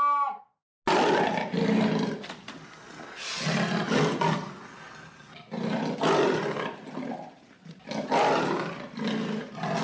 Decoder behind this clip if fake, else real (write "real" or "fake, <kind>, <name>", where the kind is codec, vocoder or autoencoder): real